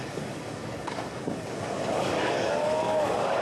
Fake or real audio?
fake